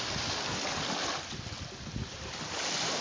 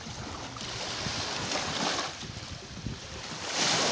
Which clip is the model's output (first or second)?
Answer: second